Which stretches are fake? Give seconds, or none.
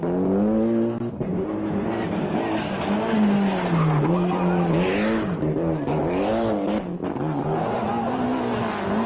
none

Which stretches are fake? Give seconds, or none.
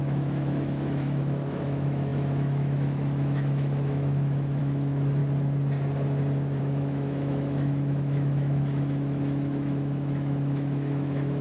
0.0-5.2 (autoencoder, DAC-VAE); 6.6-11.4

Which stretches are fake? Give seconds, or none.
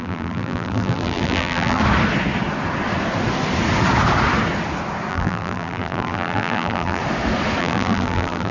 0.0-1.8 (vocoder, BigVGAN v2); 5.1-7.0; 7.6-8.5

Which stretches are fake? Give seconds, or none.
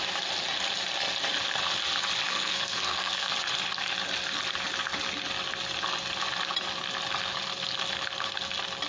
2.3-3.3 (codec, SNAC)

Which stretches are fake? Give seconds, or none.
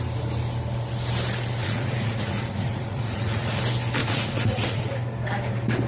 1.6-3.6 (vocoder, Vocos); 4.0-4.8